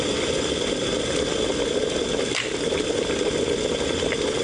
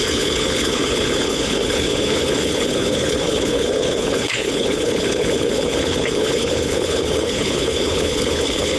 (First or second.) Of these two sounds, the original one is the first